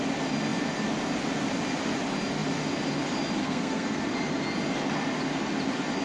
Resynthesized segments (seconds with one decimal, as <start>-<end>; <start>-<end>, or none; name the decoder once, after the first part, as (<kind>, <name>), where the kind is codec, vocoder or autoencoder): 3.4-4.0 (codec, SNAC)